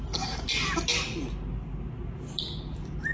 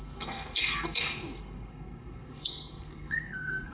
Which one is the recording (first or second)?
first